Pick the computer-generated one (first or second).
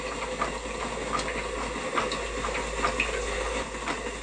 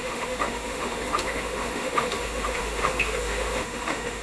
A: second